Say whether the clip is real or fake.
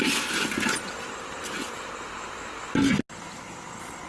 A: real